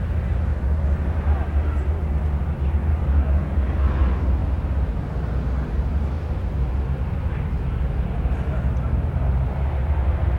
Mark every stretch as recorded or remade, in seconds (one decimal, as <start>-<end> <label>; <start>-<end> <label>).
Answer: 0.0-2.9 recorded; 2.9-4.0 remade; 4.0-10.4 recorded